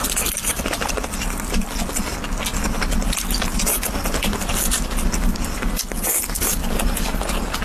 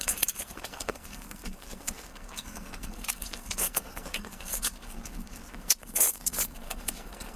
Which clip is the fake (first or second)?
second